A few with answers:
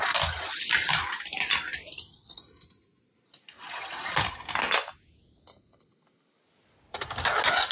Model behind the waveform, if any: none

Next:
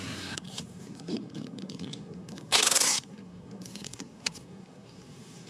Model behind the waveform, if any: codec, SNAC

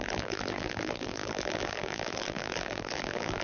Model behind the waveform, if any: vocoder, BigVGAN v2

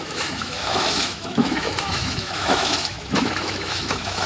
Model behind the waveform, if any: autoencoder, DAC-VAE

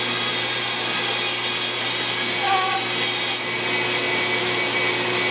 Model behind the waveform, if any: none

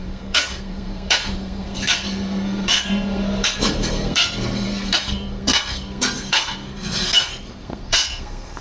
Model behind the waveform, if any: codec, SNAC